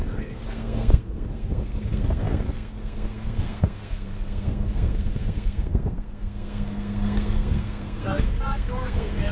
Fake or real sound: fake